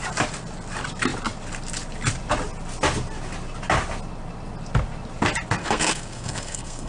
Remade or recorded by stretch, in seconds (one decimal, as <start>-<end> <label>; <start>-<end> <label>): 0.0-5.6 recorded; 5.6-6.9 remade